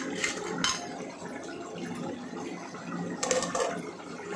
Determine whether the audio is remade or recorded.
recorded